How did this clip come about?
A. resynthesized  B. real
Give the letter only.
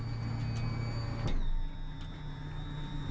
B